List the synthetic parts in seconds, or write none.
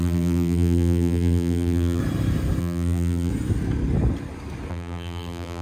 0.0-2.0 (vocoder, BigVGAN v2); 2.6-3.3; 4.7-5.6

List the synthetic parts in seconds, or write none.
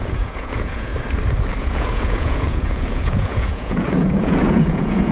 0.0-0.9 (vocoder, Vocos); 1.6-5.1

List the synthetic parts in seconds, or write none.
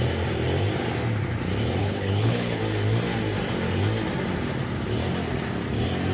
1.8-2.6 (codec, HILCodec)